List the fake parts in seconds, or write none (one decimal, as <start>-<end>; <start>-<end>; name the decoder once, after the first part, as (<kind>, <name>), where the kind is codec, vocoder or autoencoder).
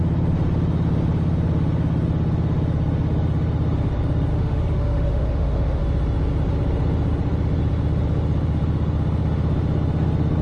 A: 4.3-5.8 (autoencoder, DAC-VAE)